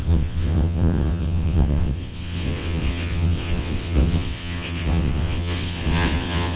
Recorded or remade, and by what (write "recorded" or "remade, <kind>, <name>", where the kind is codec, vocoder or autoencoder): remade, vocoder, WaveNeXt